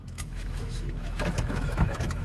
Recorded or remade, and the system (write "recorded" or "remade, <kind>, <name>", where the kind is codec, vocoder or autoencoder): remade, autoencoder, DAC-VAE